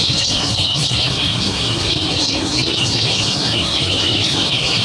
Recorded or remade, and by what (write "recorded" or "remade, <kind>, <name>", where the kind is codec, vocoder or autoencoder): remade, codec, SNAC